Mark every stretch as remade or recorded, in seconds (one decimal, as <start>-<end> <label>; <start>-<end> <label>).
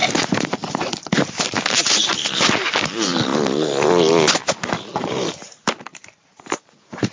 0.0-3.3 remade; 3.3-5.0 recorded; 5.0-7.1 remade